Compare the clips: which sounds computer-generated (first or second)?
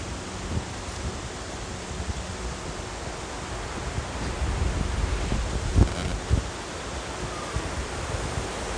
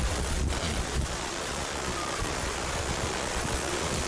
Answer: second